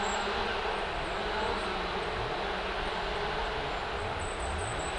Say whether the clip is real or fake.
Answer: real